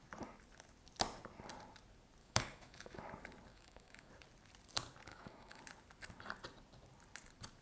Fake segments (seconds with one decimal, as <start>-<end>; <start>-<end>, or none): 2.2-3.0; 3.5-4.1; 5.1-5.6